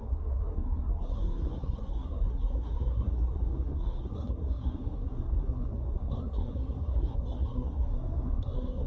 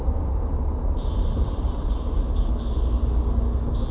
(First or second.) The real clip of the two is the second